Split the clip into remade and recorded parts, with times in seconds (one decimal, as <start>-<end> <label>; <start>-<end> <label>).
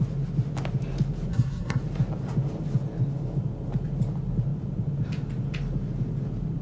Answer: 0.0-1.3 recorded; 1.3-1.8 remade; 1.8-6.6 recorded